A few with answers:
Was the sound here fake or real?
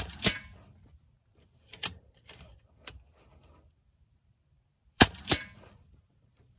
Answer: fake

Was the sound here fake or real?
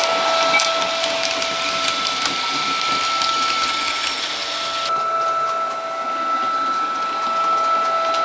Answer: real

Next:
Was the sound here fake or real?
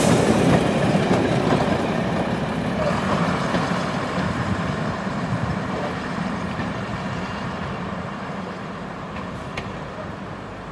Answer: fake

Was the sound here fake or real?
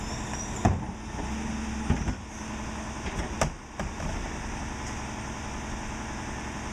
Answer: real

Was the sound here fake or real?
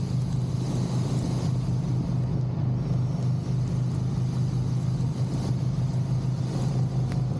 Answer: real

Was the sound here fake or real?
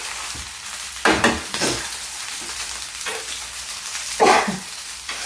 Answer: fake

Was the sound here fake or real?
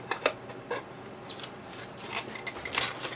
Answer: real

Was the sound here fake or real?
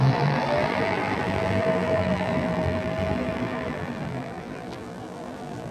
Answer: fake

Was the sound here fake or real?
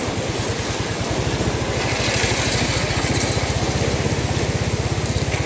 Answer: real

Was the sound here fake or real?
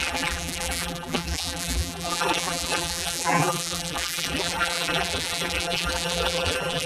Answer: fake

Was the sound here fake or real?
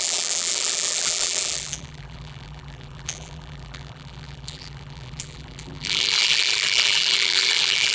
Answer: fake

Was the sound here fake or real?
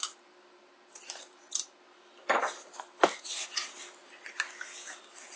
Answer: real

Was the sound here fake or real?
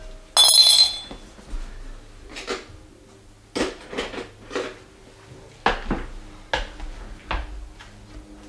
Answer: real